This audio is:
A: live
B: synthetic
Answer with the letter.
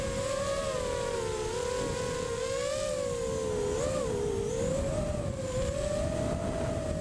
A